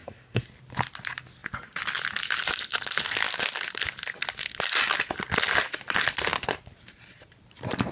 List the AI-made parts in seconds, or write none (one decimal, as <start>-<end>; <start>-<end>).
0.0-0.5